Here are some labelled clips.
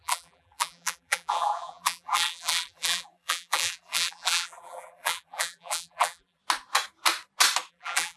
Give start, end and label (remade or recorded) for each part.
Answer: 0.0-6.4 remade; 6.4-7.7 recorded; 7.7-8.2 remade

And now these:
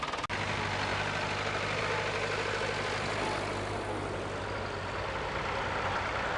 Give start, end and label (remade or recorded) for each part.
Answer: 0.0-6.4 recorded